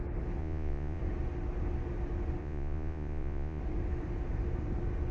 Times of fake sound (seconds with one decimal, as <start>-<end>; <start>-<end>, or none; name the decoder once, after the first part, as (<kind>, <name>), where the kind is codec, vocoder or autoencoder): 0.4-1.0 (vocoder, Vocos); 2.4-3.6

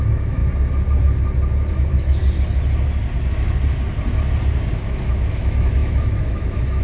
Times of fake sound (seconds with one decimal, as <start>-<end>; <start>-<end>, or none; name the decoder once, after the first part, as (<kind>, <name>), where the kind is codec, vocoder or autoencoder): 0.0-0.4 (autoencoder, DAC-VAE); 1.7-2.2; 4.8-6.8

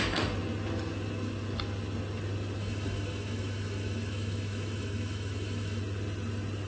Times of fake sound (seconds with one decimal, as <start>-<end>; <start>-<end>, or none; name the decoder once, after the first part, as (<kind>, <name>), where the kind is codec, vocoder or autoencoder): 2.6-5.8 (autoencoder, DAC-VAE)